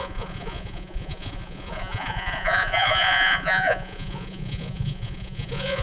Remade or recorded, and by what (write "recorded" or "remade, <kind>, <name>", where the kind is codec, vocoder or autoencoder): remade, vocoder, Vocos